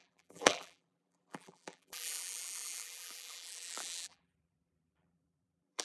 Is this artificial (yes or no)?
yes